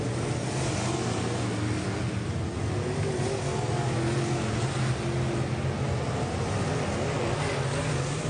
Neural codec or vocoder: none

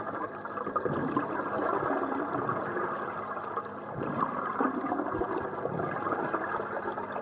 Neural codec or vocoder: vocoder, BigVGAN v2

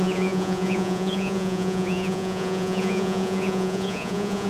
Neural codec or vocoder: vocoder, Vocos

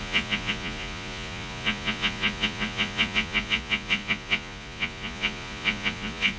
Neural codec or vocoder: vocoder, Vocos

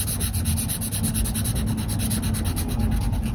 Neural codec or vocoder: none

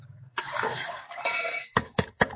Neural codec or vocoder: codec, DAC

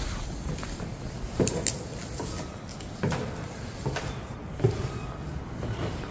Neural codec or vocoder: none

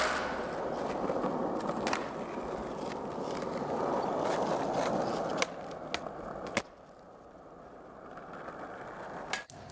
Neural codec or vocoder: none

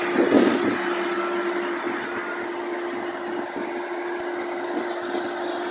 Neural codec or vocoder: none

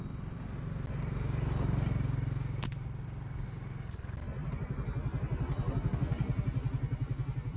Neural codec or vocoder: none